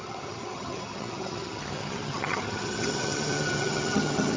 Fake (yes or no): yes